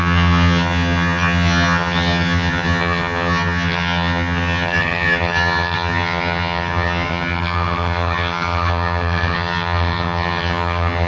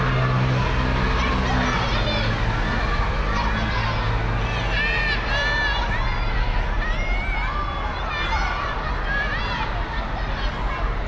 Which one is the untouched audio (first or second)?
second